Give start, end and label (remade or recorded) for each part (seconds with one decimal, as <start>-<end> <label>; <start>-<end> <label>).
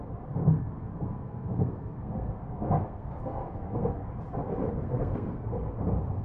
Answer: 0.0-0.4 recorded; 0.4-4.1 remade; 4.1-4.8 recorded; 4.8-5.7 remade; 5.7-6.2 recorded